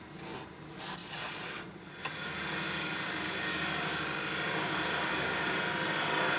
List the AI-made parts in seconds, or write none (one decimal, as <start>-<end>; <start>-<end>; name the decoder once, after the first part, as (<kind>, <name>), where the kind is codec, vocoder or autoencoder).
1.0-2.0 (vocoder, Vocos)